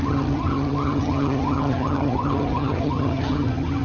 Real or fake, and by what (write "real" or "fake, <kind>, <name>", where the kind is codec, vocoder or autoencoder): fake, vocoder, HiFi-GAN